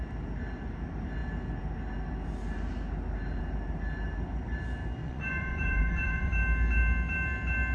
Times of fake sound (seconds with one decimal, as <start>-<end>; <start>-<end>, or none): 5.0-6.3